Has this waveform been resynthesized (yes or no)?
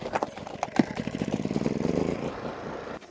yes